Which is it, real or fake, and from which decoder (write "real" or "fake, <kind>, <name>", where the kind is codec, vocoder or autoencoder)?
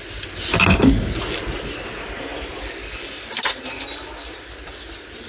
real